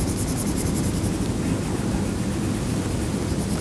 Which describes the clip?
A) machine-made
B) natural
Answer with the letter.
B